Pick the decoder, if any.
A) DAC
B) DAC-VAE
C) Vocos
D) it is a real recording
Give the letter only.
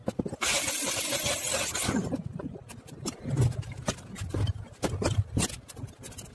D